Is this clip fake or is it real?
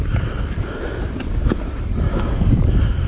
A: real